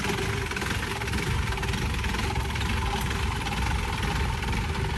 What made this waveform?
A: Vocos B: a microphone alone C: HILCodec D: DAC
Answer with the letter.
B